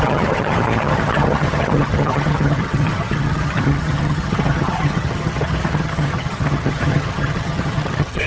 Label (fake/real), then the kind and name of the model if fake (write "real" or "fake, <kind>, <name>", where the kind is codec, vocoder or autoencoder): fake, vocoder, HiFi-GAN